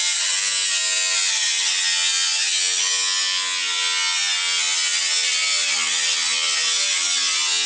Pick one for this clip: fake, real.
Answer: real